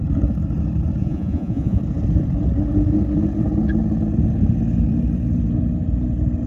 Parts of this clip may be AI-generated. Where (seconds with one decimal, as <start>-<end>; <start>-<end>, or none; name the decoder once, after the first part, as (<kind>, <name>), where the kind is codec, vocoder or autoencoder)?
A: 1.0-1.8 (vocoder, Vocos)